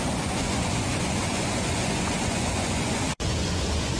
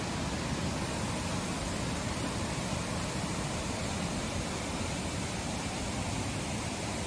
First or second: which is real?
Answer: second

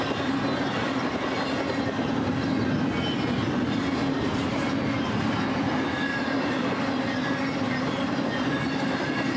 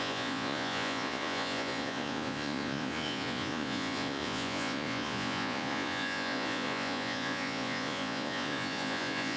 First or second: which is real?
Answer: first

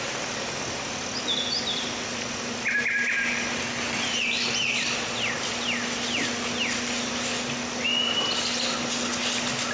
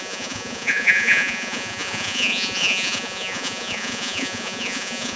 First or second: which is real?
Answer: first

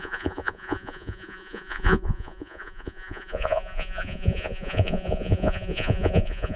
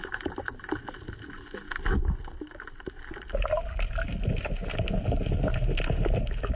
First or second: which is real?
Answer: second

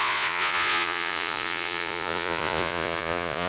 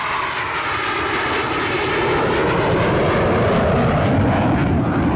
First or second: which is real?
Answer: second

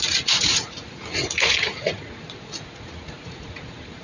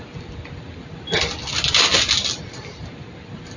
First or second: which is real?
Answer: second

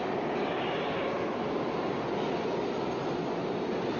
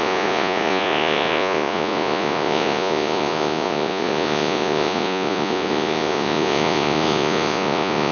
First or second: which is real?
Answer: first